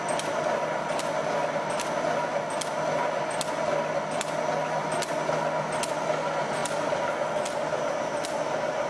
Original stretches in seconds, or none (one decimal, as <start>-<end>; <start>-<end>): 0.0-8.9